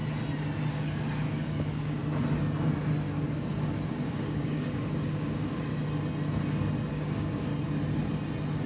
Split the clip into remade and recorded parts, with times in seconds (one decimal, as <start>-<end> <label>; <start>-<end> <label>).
0.0-0.7 recorded; 0.7-2.0 remade; 2.0-3.9 recorded; 3.9-5.7 remade; 5.7-6.9 recorded; 6.9-7.5 remade; 7.5-8.7 recorded